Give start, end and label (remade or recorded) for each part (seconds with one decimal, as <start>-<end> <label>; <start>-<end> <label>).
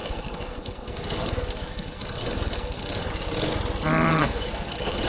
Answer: 0.0-3.1 remade; 3.1-4.1 recorded; 4.1-5.1 remade